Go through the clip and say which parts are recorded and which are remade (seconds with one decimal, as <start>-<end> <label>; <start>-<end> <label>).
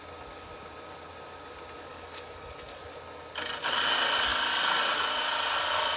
0.0-1.9 recorded; 1.9-2.8 remade; 2.8-6.0 recorded